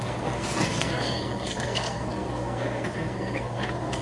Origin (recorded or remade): remade